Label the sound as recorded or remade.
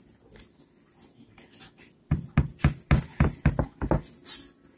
recorded